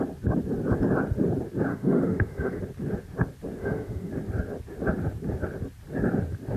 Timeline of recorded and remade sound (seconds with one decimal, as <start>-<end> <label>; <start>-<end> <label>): 0.0-1.7 recorded; 1.7-2.6 remade; 2.6-3.6 recorded; 3.6-4.1 remade; 4.1-6.6 recorded